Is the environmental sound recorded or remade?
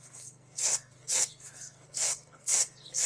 remade